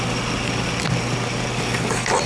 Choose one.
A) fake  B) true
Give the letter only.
B